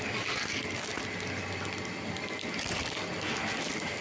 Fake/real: real